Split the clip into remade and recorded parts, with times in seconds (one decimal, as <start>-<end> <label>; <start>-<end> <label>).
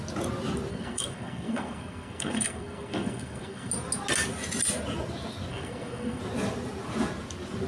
0.0-0.7 recorded; 0.7-3.7 remade; 3.7-5.5 recorded; 5.5-6.2 remade; 6.2-7.7 recorded